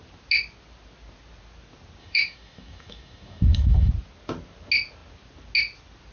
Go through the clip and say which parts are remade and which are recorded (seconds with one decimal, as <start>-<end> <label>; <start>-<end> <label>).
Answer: 0.0-2.0 recorded; 2.0-3.9 remade; 3.9-6.1 recorded